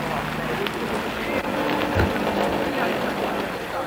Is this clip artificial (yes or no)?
no